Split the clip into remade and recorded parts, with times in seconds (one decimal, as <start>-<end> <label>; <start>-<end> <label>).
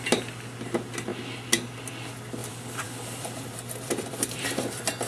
0.0-2.4 recorded; 2.4-5.1 remade